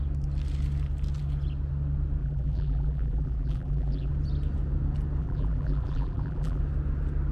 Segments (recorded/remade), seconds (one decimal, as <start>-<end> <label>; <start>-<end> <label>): 0.0-2.2 recorded; 2.2-4.1 remade; 4.1-5.2 recorded; 5.2-6.6 remade; 6.6-7.3 recorded